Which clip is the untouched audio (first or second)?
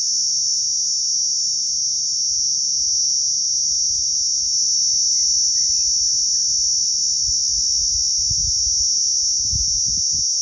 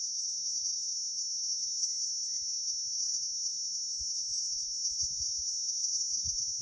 first